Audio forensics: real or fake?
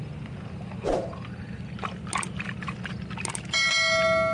real